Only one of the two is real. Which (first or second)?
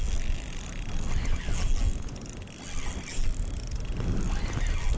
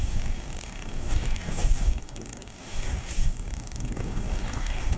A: first